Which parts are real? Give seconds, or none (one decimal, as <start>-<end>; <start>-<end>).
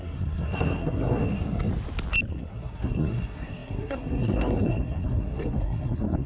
1.7-2.3